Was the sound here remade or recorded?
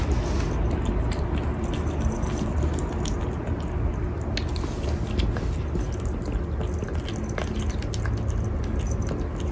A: recorded